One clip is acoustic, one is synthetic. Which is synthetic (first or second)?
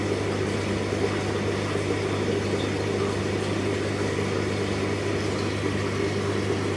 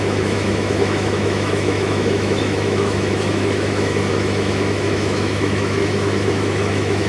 second